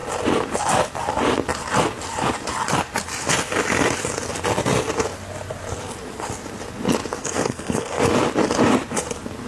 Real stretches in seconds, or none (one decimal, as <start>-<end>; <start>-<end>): 0.0-7.2; 8.0-9.5